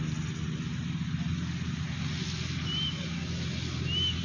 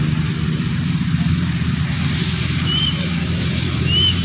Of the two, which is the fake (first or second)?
second